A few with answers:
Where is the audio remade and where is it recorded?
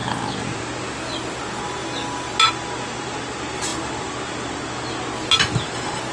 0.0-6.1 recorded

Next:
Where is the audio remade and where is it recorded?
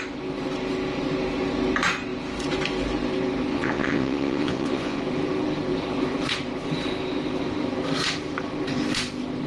0.0-3.5 recorded; 3.5-5.0 remade; 5.0-9.5 recorded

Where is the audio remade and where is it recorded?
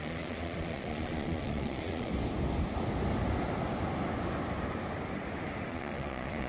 0.0-2.1 remade; 2.1-5.7 recorded; 5.7-6.5 remade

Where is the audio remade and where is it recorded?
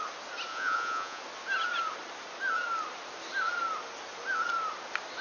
0.0-0.5 recorded; 0.5-1.2 remade; 1.2-5.2 recorded